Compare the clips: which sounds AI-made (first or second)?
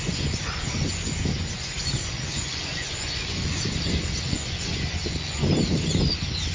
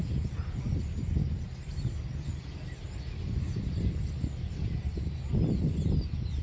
first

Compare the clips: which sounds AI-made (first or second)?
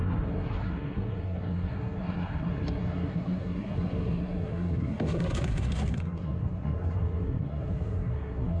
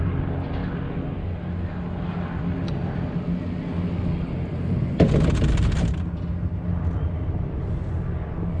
first